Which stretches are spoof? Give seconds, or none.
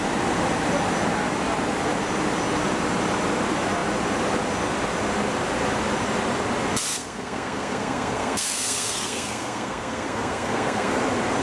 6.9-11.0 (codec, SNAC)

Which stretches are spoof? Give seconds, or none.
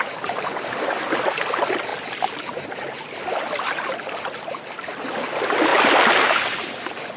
none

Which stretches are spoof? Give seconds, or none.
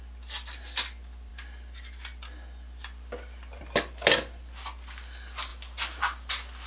none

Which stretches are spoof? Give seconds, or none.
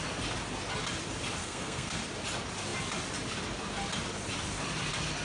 1.4-2.0 (codec, SNAC)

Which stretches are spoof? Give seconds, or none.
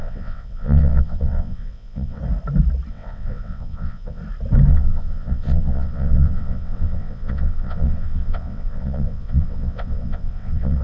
0.0-2.2 (vocoder, WaveNeXt); 2.9-4.2; 4.7-10.8